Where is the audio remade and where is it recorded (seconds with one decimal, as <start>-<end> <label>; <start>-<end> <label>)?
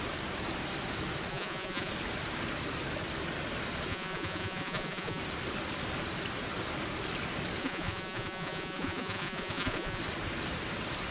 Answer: 0.0-1.3 recorded; 1.3-1.9 remade; 1.9-3.9 recorded; 3.9-5.2 remade; 5.2-7.6 recorded; 7.6-10.0 remade; 10.0-11.1 recorded